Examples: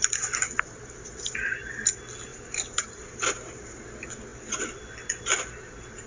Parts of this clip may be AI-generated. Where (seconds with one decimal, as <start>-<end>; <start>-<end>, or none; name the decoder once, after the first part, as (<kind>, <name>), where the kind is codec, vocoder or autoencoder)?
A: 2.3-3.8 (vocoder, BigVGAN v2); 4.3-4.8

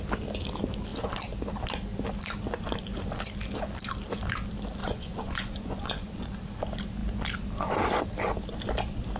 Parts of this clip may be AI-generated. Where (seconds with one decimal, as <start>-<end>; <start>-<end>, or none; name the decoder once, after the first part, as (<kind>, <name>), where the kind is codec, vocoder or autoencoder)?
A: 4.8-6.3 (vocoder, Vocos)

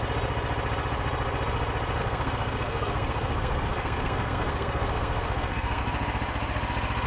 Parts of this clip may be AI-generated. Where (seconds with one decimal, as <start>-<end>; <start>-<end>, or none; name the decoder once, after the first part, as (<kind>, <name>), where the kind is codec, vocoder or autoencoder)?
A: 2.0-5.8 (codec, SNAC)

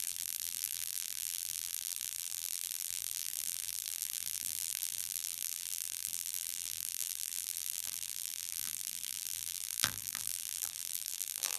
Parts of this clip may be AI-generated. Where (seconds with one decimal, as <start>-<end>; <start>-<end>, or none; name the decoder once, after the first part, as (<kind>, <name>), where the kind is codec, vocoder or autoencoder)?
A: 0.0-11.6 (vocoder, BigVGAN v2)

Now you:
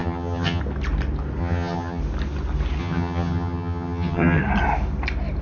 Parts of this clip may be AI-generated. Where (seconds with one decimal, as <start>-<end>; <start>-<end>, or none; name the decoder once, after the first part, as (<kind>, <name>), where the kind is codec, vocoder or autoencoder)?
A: 0.0-0.6 (vocoder, HiFi-GAN); 1.4-2.0; 2.8-4.4

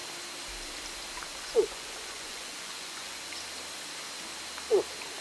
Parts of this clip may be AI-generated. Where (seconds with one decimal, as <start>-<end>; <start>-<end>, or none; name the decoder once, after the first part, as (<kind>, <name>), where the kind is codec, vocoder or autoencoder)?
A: 1.4-3.3 (vocoder, Vocos)

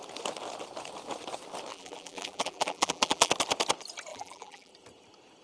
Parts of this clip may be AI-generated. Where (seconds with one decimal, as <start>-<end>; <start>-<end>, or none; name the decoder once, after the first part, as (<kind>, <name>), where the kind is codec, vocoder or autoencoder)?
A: 1.7-3.3 (vocoder, BigVGAN v2); 4.1-4.7